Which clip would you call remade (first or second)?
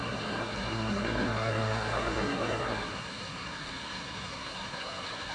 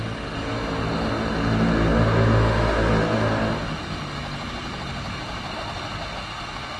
first